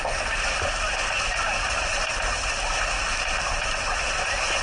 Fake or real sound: real